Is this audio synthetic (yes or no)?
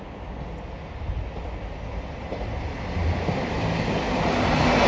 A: no